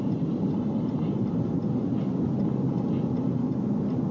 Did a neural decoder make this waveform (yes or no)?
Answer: no